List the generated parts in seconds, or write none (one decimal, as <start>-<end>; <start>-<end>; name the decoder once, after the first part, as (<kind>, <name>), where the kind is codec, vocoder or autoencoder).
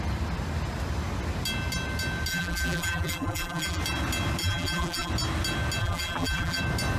2.3-3.8 (vocoder, BigVGAN v2); 4.4-5.1; 5.8-6.6